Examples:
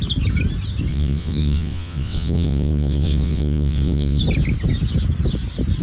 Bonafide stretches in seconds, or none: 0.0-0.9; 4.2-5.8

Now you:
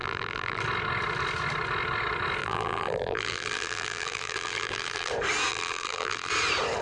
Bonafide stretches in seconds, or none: 0.6-2.4; 5.1-5.5; 6.3-6.8

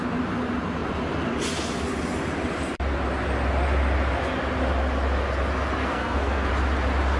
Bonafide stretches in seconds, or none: 0.0-5.8; 6.5-7.2

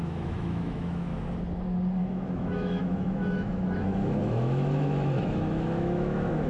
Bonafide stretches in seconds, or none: 1.1-2.0

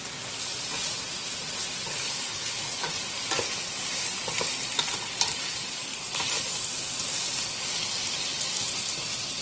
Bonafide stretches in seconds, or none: 0.0-1.9; 2.9-9.4

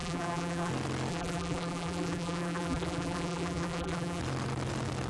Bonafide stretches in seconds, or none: 0.7-1.1; 4.2-5.1

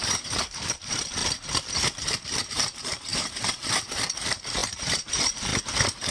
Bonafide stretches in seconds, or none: 1.2-2.5; 5.5-6.1